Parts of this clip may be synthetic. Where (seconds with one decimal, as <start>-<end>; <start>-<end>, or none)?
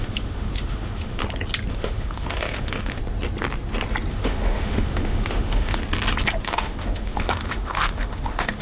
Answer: 0.0-1.2; 1.7-3.0; 4.1-5.8; 6.4-8.6